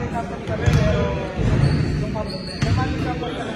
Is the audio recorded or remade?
recorded